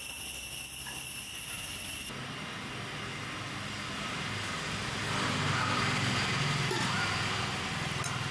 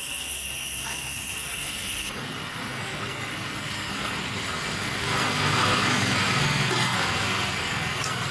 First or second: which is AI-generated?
second